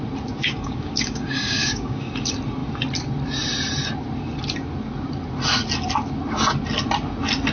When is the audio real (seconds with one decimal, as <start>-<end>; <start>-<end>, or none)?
0.0-0.4; 2.1-7.5